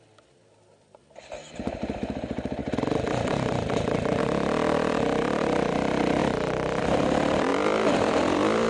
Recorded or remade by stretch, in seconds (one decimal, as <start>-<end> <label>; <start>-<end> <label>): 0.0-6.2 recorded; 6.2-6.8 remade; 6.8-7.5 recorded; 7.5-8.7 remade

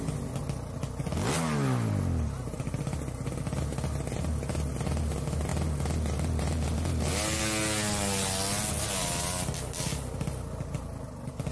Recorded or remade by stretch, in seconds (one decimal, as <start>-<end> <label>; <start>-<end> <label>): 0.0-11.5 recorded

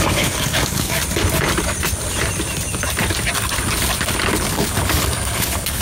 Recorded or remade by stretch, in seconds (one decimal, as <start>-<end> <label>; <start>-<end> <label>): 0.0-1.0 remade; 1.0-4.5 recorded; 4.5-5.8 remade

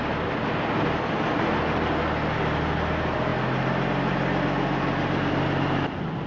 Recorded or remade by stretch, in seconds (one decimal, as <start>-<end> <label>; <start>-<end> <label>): 0.0-6.3 recorded